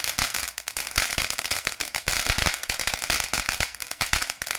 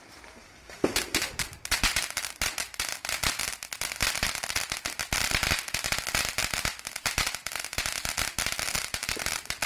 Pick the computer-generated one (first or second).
first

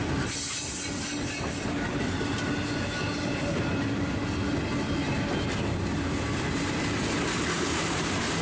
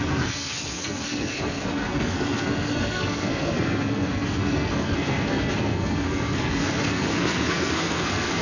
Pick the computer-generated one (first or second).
second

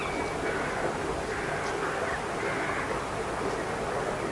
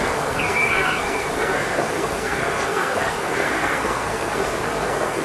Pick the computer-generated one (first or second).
second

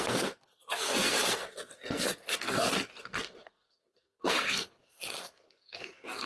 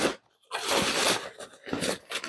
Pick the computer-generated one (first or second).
first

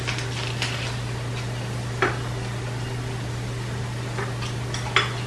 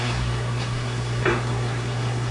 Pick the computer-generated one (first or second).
second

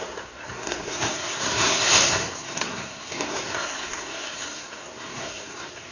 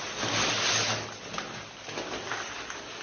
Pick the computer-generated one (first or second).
first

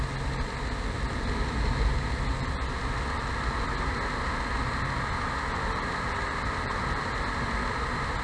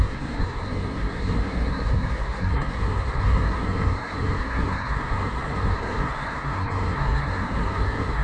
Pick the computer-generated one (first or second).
second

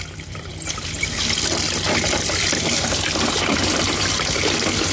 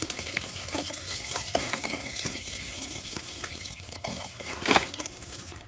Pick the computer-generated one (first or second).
second